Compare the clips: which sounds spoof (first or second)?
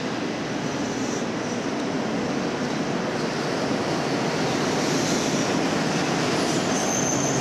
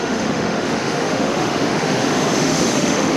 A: second